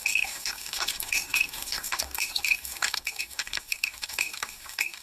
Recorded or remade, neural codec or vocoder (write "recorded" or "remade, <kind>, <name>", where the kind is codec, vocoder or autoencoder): remade, codec, DAC